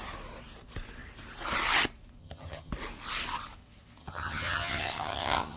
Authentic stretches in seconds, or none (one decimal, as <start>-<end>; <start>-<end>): 0.0-2.2; 2.7-4.0